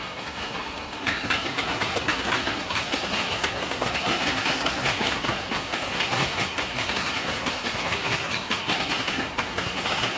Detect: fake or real fake